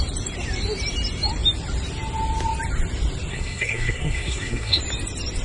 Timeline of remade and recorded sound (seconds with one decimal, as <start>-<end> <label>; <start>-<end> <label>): 0.0-3.3 recorded; 3.3-4.8 remade; 4.8-5.4 recorded